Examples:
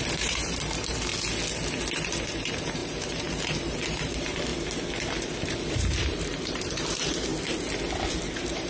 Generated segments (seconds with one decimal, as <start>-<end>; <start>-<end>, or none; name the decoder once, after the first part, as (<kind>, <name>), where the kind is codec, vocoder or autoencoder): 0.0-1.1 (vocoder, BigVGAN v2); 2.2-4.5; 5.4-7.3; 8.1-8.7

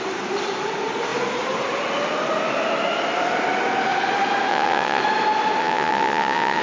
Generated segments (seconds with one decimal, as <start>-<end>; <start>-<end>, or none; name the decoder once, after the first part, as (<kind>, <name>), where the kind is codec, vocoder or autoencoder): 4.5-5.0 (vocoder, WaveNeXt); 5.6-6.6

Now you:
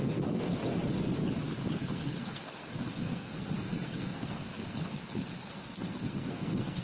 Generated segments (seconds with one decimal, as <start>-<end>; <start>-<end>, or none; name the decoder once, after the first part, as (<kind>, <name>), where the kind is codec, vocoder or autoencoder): 0.0-0.5 (codec, SNAC); 1.8-6.8

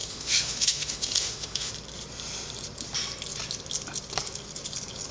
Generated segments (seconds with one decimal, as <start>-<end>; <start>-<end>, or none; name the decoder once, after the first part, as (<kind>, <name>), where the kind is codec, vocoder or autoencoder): 0.0-1.7 (autoencoder, DAC-VAE)

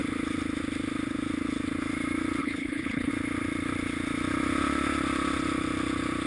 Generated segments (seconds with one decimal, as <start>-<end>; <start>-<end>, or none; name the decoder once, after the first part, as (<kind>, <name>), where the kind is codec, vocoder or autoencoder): 2.4-3.1 (codec, HILCodec)

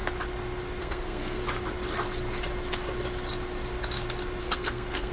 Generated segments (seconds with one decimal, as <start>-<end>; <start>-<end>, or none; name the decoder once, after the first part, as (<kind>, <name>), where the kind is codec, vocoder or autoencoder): 0.8-1.4 (codec, SNAC); 4.4-5.1

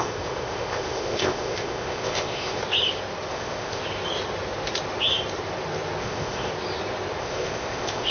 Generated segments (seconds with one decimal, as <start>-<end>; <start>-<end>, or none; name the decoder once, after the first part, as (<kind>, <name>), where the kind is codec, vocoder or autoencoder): 0.0-2.6 (codec, ZipCodec); 3.3-3.8; 6.0-6.5; 7.2-8.1